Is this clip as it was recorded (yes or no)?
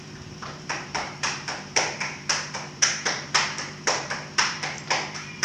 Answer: no